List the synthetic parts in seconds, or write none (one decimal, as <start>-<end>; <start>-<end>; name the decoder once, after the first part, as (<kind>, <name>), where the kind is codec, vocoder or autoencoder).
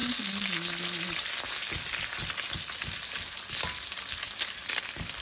none